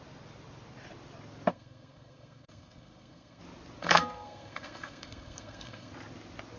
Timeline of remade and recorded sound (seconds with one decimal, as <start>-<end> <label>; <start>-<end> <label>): 0.0-1.5 recorded; 1.5-3.4 remade; 3.4-3.8 recorded; 3.8-5.9 remade; 5.9-6.6 recorded